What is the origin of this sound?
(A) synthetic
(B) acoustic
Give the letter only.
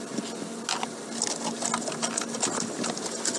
B